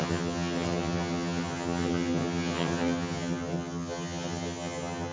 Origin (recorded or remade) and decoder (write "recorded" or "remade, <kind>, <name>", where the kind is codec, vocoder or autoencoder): remade, vocoder, HiFi-GAN